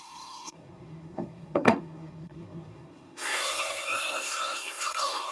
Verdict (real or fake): fake